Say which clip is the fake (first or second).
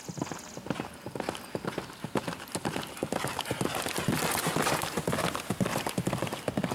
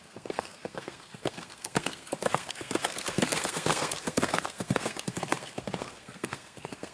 second